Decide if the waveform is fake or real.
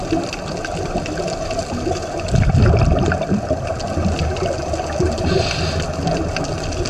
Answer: real